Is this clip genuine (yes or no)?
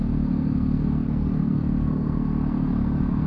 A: no